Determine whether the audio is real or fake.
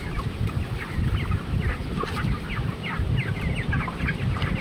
real